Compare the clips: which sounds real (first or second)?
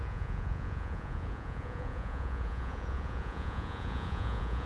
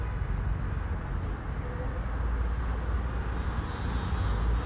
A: second